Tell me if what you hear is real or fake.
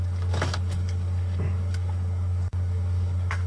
fake